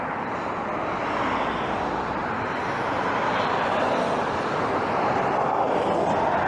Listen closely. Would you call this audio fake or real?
real